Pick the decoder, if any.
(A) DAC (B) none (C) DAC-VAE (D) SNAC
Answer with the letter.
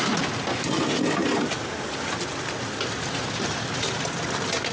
B